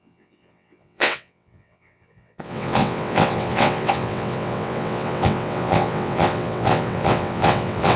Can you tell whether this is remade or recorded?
remade